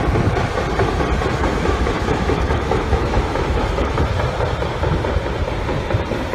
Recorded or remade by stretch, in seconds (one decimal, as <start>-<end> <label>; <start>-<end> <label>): 0.0-1.4 recorded; 1.4-3.9 remade; 3.9-6.3 recorded

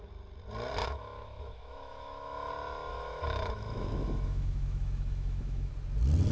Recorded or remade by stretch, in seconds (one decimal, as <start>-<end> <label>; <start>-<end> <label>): 0.0-0.8 recorded; 0.8-2.5 remade; 2.5-2.9 recorded; 2.9-5.7 remade; 5.7-6.3 recorded

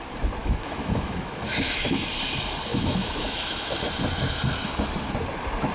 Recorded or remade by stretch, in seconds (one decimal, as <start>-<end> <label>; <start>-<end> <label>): 0.0-0.4 recorded; 0.4-2.1 remade; 2.1-2.7 recorded; 2.7-3.7 remade; 3.7-5.7 recorded

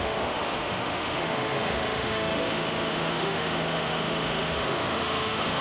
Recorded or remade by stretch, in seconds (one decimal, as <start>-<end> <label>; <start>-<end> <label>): 0.0-5.6 remade